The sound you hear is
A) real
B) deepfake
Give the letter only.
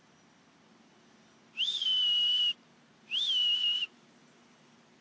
A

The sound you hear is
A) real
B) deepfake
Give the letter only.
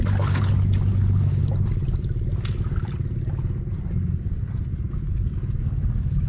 A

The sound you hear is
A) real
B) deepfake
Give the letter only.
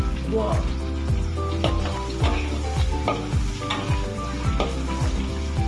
A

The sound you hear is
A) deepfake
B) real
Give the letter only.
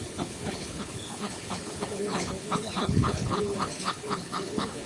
A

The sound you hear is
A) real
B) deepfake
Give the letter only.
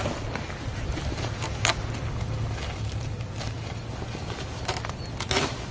A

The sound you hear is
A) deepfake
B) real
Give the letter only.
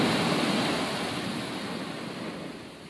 B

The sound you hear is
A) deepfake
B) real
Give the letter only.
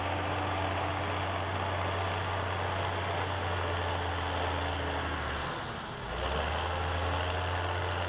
B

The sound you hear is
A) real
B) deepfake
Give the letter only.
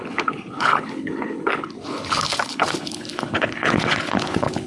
B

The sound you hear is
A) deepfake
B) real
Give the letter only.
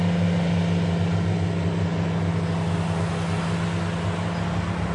B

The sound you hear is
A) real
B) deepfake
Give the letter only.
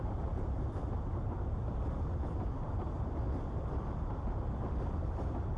A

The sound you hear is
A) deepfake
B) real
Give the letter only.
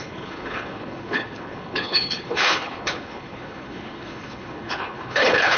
A